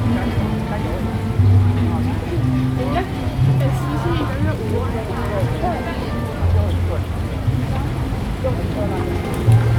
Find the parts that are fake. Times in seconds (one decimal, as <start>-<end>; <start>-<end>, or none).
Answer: 2.9-3.5